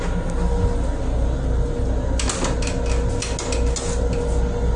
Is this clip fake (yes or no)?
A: no